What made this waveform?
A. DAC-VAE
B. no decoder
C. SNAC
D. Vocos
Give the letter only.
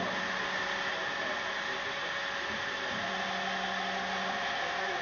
B